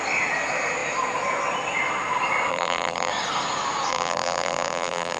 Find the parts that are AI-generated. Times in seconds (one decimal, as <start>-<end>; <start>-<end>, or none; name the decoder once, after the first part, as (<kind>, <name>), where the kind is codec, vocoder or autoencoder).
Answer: 2.5-3.1 (vocoder, BigVGAN v2); 3.9-5.2